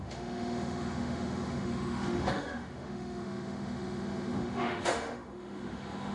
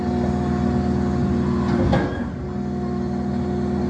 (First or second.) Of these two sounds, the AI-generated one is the first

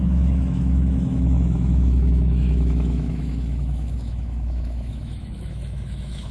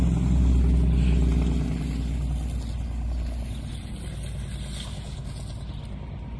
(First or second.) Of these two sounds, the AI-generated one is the first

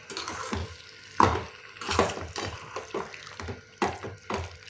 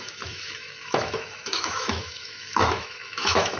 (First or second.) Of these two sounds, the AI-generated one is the second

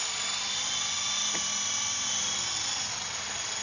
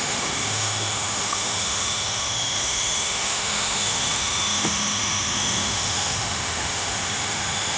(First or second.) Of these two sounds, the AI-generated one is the second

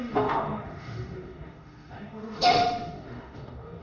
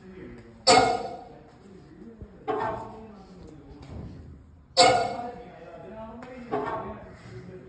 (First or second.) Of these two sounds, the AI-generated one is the first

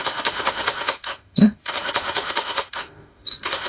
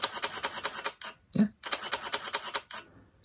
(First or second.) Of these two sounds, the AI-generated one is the first